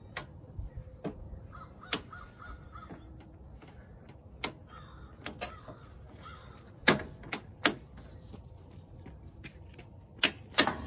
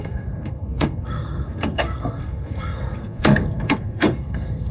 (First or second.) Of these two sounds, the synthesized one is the second